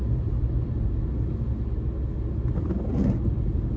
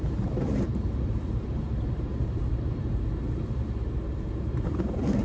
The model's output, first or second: second